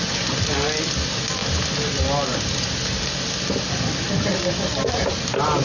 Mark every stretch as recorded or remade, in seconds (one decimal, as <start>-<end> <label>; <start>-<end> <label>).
0.0-4.3 recorded; 4.3-5.6 remade